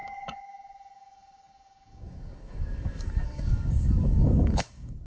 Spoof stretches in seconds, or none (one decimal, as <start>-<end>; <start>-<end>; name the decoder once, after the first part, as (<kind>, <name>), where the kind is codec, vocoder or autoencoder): 0.0-5.1 (codec, DAC)